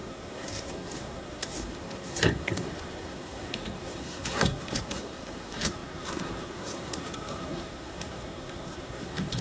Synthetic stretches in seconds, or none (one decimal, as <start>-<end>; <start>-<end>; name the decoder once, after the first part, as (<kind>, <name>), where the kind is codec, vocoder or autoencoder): 0.0-9.4 (codec, SNAC)

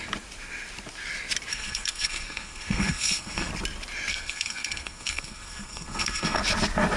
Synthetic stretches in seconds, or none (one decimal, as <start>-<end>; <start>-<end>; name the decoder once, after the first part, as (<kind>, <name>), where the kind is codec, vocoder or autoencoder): 1.5-3.5 (codec, SNAC); 4.1-6.4

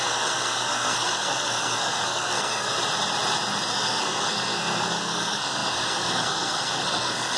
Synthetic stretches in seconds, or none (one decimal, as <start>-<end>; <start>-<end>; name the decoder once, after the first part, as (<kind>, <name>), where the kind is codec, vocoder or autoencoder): 0.0-2.7 (codec, SNAC); 3.7-7.4